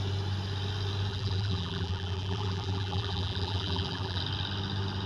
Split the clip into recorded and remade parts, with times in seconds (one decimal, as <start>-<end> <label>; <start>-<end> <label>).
0.0-1.1 recorded; 1.1-4.2 remade; 4.2-5.1 recorded